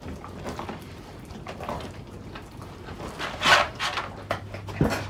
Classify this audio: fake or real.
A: real